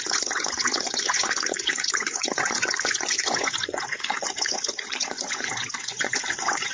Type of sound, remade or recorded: remade